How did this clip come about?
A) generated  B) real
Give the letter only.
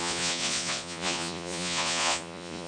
A